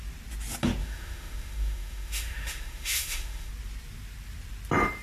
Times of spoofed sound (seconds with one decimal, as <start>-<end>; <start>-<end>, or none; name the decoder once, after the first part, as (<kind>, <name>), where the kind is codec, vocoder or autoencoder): 0.8-3.5 (autoencoder, DAC-VAE)